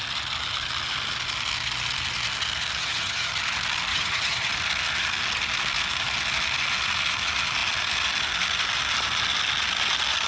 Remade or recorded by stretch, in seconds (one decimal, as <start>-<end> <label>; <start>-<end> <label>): 0.0-2.8 recorded; 2.8-3.3 remade; 3.3-3.9 recorded; 3.9-4.5 remade; 4.5-10.3 recorded